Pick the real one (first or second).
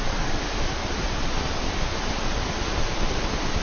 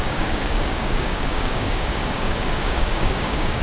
first